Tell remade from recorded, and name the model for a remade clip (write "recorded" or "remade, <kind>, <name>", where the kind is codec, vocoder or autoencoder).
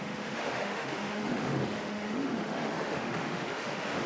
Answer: remade, autoencoder, DAC-VAE